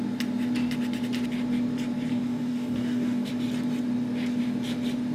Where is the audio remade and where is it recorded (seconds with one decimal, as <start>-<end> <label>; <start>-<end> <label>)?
0.0-2.1 recorded; 2.1-3.3 remade; 3.3-5.1 recorded